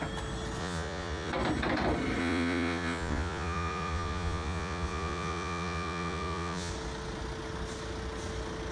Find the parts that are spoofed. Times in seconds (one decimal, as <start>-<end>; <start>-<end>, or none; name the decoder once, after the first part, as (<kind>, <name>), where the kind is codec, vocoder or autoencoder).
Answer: 0.6-1.3 (vocoder, Vocos); 2.2-6.7